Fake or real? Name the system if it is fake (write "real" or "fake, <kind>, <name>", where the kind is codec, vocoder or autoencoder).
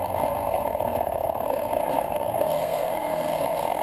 fake, codec, SNAC